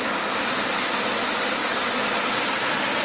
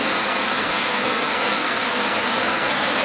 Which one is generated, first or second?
second